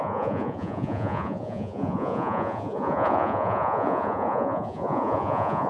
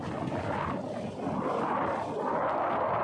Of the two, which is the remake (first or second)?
first